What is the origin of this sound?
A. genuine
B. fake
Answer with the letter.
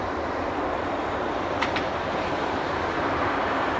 B